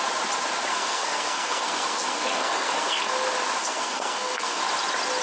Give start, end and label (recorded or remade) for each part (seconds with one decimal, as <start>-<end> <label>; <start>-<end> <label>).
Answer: 0.0-0.7 recorded; 0.7-3.1 remade; 3.1-3.6 recorded; 3.6-4.6 remade; 4.6-5.2 recorded